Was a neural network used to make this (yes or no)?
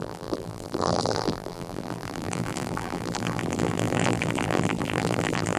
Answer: yes